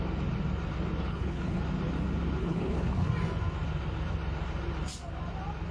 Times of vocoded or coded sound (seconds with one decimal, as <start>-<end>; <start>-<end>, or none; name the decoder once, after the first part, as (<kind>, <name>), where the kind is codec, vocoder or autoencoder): 1.0-1.6 (codec, HILCodec); 2.4-3.1